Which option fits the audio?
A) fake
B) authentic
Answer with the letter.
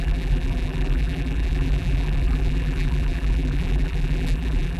A